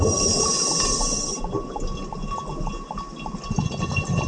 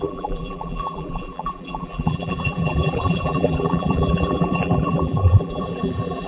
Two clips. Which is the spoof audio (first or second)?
second